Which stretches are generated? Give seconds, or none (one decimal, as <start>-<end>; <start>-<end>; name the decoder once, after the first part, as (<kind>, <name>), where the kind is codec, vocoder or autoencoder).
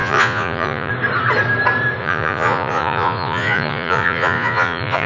0.0-0.9 (vocoder, Vocos); 2.0-5.1